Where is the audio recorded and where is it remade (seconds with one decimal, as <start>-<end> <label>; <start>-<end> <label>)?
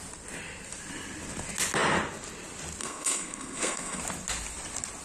0.0-2.8 recorded; 2.8-4.0 remade; 4.0-5.0 recorded